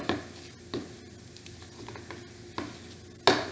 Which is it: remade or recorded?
recorded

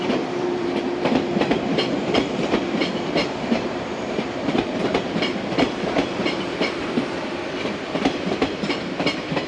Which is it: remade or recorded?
remade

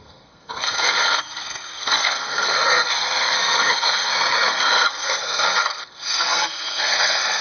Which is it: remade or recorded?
remade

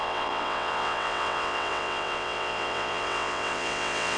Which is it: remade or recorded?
remade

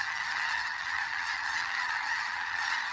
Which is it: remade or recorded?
remade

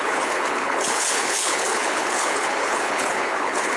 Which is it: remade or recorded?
remade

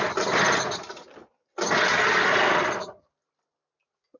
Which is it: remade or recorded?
recorded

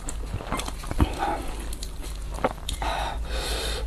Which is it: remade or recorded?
recorded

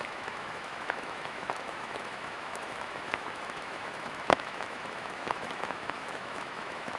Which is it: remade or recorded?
remade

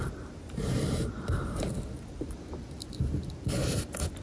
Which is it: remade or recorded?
recorded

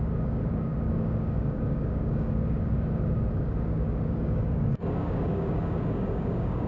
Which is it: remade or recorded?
remade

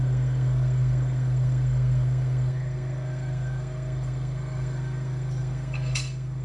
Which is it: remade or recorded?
remade